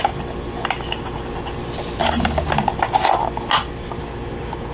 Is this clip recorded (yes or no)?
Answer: yes